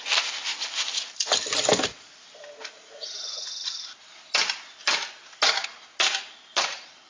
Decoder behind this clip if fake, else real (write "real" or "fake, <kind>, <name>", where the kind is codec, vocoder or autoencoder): real